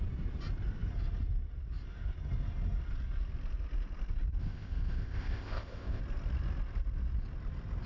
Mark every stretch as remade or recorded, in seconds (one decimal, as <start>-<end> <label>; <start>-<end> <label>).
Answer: 0.0-4.4 recorded; 4.4-6.0 remade; 6.0-7.9 recorded